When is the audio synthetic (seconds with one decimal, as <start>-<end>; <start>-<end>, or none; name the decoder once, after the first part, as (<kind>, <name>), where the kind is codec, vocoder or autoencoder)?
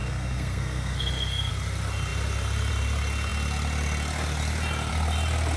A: 0.0-1.5 (codec, SNAC)